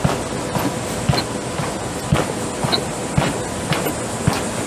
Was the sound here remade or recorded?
recorded